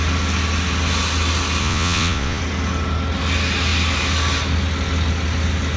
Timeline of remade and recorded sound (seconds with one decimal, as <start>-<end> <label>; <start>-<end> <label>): 0.0-1.6 recorded; 1.6-2.4 remade; 2.4-5.8 recorded